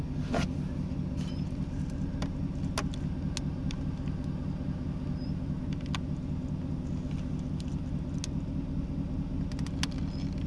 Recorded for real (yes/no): yes